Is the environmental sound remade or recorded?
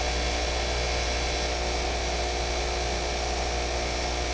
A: recorded